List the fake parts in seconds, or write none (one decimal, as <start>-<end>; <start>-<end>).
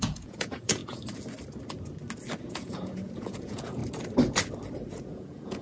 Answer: 0.0-0.8; 2.4-3.8; 4.9-5.6